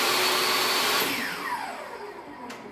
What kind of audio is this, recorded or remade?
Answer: recorded